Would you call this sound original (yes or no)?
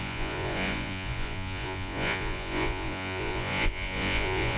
no